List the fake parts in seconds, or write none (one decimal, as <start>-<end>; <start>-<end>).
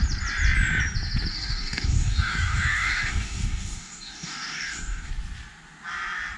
1.3-5.1